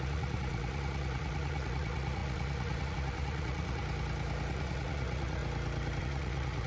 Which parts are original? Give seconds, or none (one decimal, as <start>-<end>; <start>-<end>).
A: 3.8-4.5; 5.4-6.0